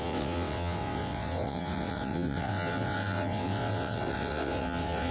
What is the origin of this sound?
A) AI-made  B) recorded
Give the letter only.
A